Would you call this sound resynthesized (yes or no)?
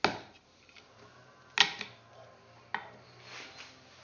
no